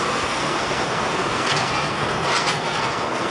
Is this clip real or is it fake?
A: fake